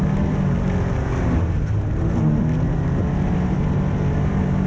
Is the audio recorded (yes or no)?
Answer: yes